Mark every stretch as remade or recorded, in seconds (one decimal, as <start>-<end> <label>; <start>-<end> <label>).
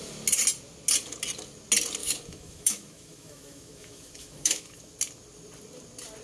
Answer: 0.0-2.0 recorded; 2.0-4.9 remade; 4.9-6.2 recorded